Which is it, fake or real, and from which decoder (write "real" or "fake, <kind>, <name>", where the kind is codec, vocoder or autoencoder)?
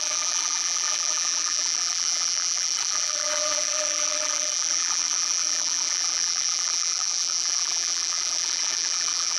fake, vocoder, BigVGAN v2